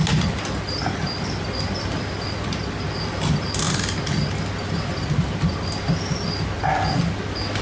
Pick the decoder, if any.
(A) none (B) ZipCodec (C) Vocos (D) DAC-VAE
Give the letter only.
A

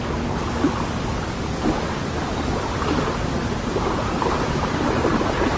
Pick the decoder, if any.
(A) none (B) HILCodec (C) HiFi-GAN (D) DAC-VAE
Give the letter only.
A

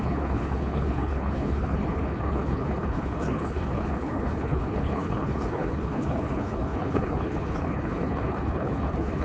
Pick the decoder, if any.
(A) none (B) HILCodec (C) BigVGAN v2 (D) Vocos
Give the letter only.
B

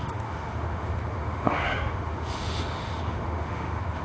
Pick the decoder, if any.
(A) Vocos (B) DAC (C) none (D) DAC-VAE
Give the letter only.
D